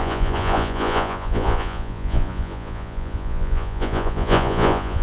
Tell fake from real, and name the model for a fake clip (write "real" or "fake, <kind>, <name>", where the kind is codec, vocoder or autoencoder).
fake, vocoder, Vocos